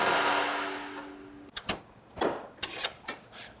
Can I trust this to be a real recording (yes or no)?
yes